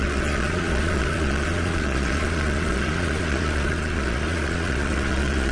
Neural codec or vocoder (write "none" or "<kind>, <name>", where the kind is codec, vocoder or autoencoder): vocoder, Vocos